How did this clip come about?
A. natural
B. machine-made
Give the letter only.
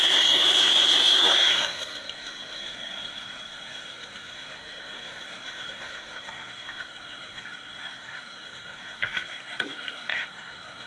B